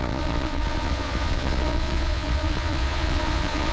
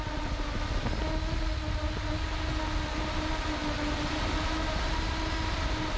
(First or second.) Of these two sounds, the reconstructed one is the first